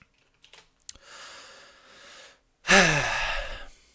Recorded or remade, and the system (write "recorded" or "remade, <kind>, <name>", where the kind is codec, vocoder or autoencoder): recorded